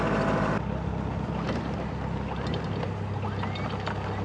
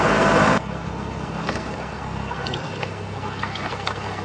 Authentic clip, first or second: first